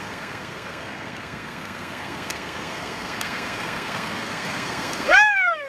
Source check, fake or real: fake